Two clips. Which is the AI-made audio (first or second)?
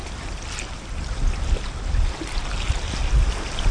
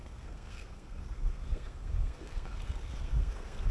second